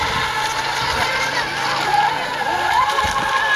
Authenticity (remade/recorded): recorded